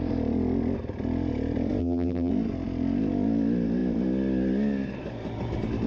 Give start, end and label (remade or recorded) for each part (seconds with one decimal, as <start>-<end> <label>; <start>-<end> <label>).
0.0-1.8 recorded; 1.8-2.3 remade; 2.3-5.9 recorded